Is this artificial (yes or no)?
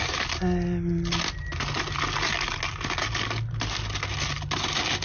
no